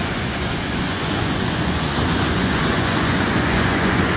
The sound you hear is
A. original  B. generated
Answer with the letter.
B